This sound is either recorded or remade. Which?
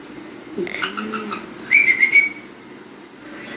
recorded